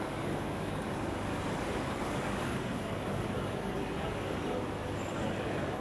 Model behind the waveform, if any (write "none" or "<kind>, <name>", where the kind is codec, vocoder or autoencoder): codec, DAC